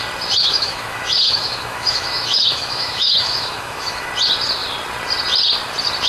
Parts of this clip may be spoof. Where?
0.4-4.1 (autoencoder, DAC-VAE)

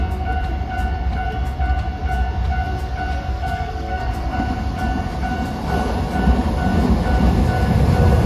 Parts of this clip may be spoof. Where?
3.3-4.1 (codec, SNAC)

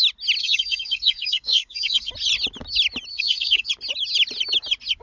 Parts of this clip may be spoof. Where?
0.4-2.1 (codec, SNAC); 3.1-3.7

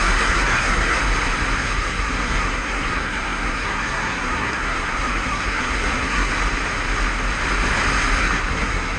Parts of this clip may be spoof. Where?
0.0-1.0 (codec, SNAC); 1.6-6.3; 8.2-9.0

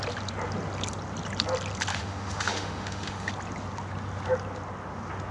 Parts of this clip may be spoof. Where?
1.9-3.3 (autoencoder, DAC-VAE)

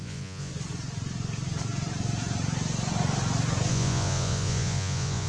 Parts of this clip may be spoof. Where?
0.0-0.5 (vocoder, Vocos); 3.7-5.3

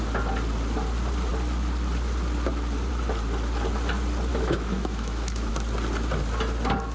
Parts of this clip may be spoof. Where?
4.3-5.5 (autoencoder, DAC-VAE)

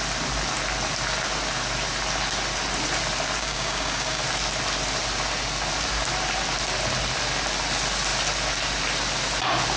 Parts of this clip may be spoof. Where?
3.4-4.2 (codec, DAC)